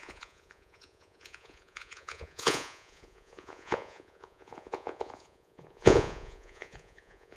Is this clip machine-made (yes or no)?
yes